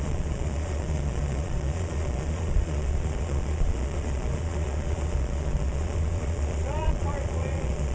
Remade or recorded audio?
remade